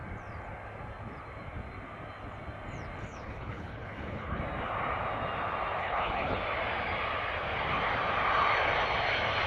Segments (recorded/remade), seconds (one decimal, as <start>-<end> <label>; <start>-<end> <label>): 0.0-3.0 recorded; 3.0-4.4 remade; 4.4-5.8 recorded; 5.8-6.4 remade; 6.4-9.5 recorded